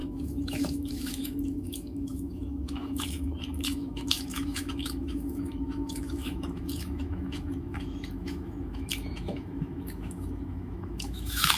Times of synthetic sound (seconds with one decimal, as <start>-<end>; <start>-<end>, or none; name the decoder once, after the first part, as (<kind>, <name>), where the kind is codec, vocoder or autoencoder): 0.0-11.6 (autoencoder, DAC-VAE)